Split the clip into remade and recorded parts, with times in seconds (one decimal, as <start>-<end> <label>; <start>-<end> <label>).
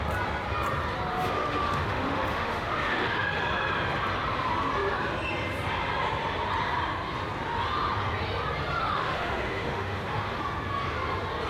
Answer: 0.0-1.1 recorded; 1.1-3.4 remade; 3.4-8.8 recorded; 8.8-10.4 remade; 10.4-11.5 recorded